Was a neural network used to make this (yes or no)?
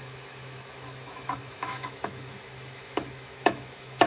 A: yes